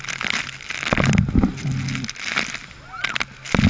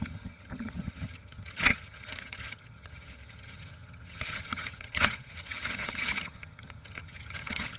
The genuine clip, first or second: first